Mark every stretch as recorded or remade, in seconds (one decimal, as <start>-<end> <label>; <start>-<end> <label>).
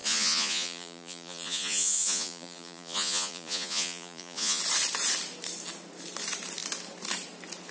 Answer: 0.0-4.6 remade; 4.6-7.7 recorded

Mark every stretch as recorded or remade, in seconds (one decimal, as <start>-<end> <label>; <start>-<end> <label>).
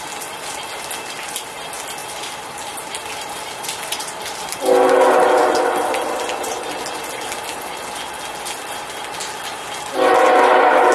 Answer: 0.0-10.9 recorded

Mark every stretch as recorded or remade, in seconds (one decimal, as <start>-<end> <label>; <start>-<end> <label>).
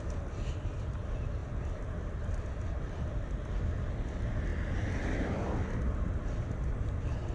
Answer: 0.0-1.4 recorded; 1.4-3.9 remade; 3.9-7.3 recorded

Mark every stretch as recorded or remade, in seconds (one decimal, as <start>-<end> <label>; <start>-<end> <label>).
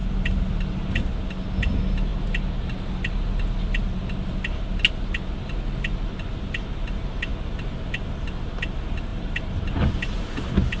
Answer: 0.0-9.1 recorded; 9.1-9.6 remade; 9.6-10.8 recorded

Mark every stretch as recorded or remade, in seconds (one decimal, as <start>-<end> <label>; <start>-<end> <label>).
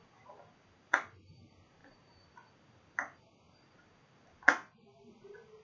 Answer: 0.0-5.6 recorded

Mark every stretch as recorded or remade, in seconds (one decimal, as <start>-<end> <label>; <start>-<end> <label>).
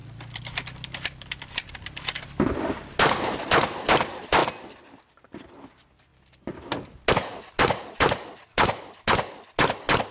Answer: 0.0-4.4 remade; 4.4-5.1 recorded; 5.1-10.1 remade